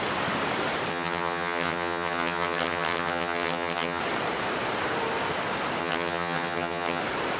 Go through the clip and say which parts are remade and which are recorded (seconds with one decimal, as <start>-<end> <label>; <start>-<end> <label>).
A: 0.0-0.9 recorded; 0.9-4.0 remade; 4.0-5.8 recorded; 5.8-7.0 remade; 7.0-7.4 recorded